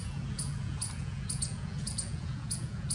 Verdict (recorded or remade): remade